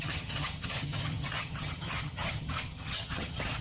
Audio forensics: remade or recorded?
remade